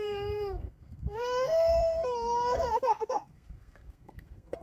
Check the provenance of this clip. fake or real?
fake